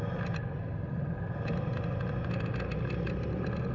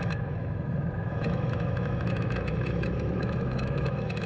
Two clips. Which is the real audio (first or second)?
first